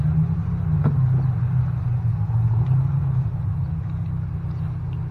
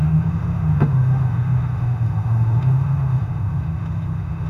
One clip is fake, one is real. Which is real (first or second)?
first